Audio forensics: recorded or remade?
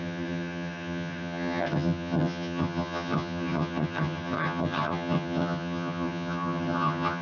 remade